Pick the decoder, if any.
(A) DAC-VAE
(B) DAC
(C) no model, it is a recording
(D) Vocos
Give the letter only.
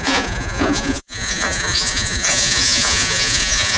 D